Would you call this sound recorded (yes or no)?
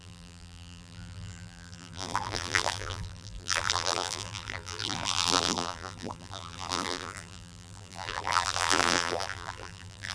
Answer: no